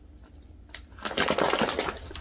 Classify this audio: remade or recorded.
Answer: recorded